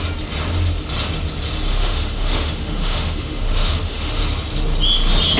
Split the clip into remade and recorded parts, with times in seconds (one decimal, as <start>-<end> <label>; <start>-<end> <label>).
0.0-1.7 recorded; 1.7-4.2 remade; 4.2-5.4 recorded